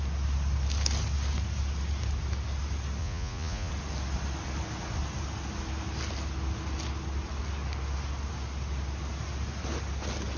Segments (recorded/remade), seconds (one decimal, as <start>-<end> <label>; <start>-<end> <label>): 0.0-3.0 recorded; 3.0-3.7 remade; 3.7-10.4 recorded